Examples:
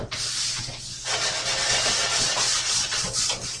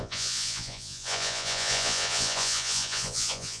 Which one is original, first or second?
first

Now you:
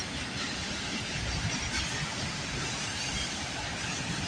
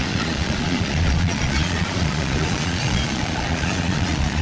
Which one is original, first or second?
first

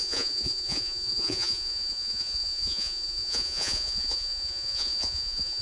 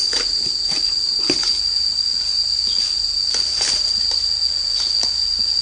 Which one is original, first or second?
second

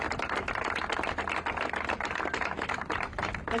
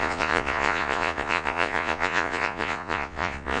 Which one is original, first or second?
first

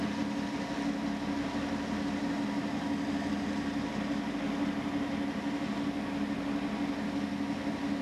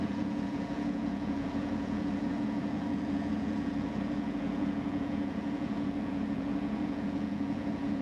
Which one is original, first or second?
first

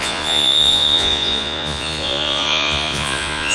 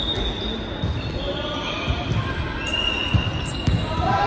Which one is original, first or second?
second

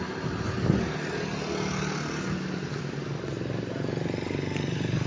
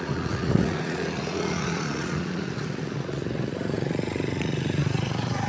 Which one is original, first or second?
first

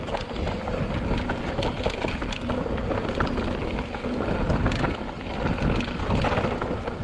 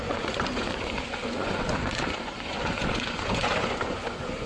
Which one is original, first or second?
first